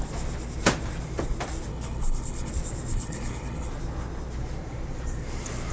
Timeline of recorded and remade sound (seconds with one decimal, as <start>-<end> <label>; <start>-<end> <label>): 0.0-1.7 recorded; 1.7-2.5 remade; 2.5-2.9 recorded; 2.9-3.7 remade; 3.7-5.7 recorded